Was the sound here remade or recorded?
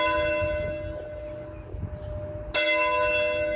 recorded